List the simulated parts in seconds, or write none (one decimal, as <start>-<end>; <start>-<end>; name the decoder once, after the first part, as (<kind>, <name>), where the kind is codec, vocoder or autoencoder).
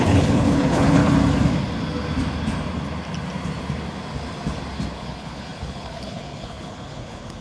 0.0-1.0 (codec, HILCodec); 4.9-7.4